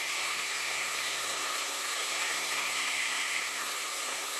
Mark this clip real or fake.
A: fake